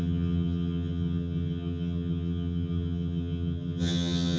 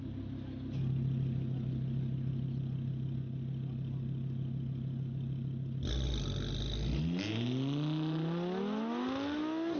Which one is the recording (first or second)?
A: second